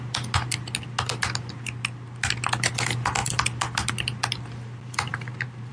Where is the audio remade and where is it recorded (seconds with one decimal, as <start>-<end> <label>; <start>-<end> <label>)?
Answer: 0.0-5.1 recorded; 5.1-5.7 remade